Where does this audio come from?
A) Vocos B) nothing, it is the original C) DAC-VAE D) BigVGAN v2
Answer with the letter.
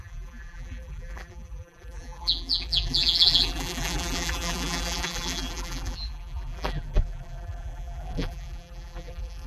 D